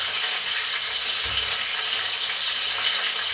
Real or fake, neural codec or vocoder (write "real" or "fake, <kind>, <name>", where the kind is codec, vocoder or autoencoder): real